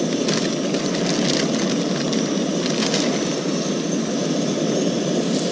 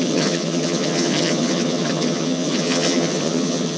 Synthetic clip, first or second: second